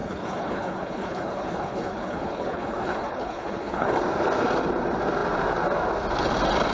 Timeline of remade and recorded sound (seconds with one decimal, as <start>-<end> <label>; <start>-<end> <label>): 0.0-4.0 remade; 4.0-6.7 recorded